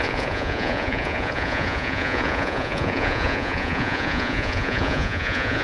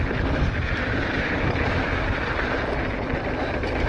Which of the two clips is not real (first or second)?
first